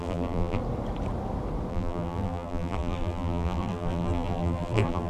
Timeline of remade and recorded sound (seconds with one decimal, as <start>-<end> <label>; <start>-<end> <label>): 0.0-0.6 remade; 0.6-1.7 recorded; 1.7-5.1 remade